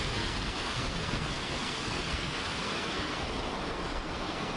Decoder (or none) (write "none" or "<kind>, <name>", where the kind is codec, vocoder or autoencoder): codec, SNAC